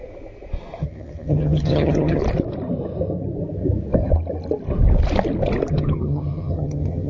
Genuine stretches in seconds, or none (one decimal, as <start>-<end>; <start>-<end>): 0.0-0.8; 2.2-5.7